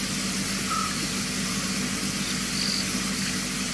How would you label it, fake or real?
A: real